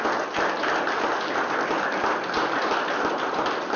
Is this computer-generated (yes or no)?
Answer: no